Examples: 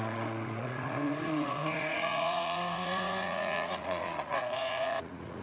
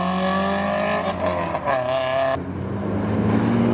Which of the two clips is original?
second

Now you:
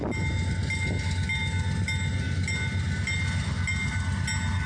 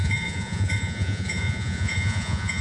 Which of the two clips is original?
first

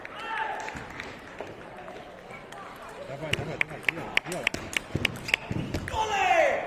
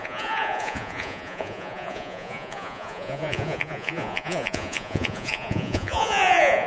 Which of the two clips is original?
first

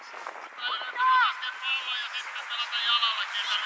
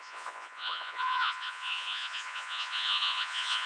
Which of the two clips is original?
first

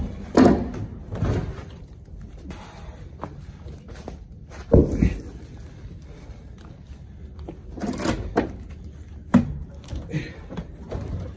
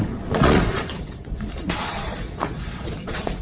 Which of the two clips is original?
first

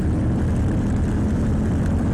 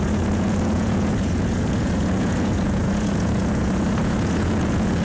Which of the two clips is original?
first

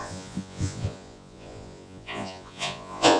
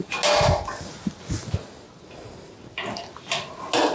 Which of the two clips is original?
second